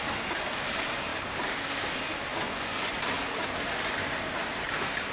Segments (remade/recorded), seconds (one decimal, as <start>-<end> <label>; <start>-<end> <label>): 0.0-2.3 recorded; 2.3-3.0 remade; 3.0-5.1 recorded